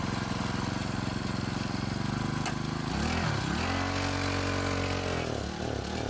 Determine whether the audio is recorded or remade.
recorded